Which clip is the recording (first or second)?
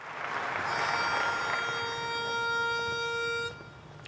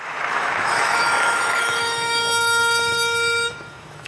first